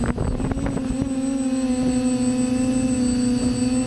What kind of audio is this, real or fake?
real